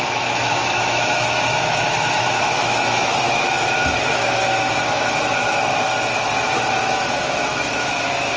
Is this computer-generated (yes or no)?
yes